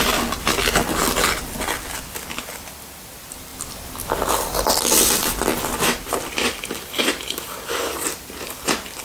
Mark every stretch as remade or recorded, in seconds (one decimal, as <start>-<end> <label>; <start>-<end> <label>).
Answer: 0.0-3.5 remade; 3.5-4.3 recorded; 4.3-5.5 remade; 5.5-6.0 recorded; 6.0-9.0 remade

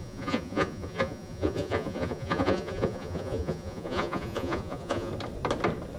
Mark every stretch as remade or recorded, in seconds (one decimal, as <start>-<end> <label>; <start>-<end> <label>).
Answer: 0.0-5.1 remade; 5.1-6.0 recorded